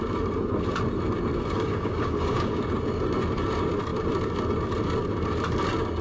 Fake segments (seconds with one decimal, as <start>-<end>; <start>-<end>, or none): 1.3-2.7